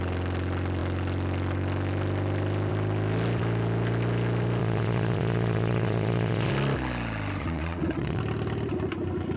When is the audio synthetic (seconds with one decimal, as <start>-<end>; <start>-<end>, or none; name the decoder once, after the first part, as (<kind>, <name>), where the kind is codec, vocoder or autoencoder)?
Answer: 4.6-6.5 (vocoder, Vocos); 7.4-8.2